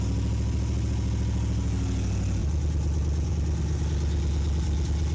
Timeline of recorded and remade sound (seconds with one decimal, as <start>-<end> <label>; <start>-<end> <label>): 0.0-5.1 recorded